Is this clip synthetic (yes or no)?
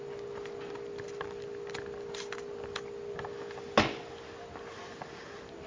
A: no